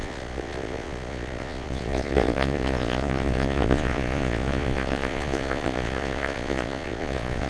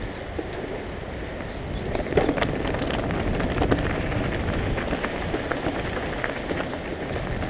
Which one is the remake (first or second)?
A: first